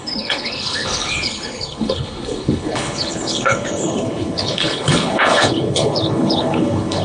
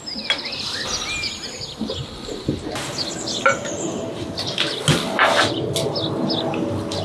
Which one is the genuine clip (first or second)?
second